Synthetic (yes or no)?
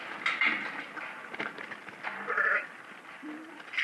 no